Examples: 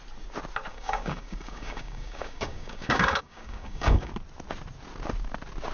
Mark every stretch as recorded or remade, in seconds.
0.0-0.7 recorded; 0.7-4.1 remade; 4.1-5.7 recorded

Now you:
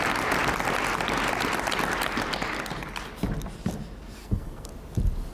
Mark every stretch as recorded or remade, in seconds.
0.0-4.2 recorded; 4.2-4.7 remade; 4.7-5.3 recorded